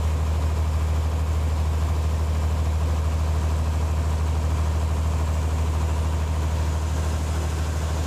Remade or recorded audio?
recorded